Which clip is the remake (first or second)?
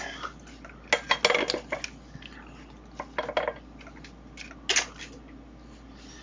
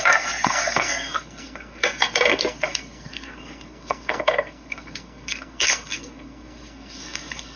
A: second